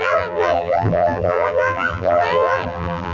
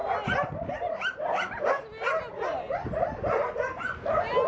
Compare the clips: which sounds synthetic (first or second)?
first